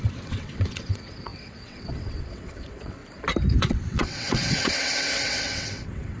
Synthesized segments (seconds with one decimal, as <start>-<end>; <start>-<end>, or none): 0.0-3.0; 3.6-6.2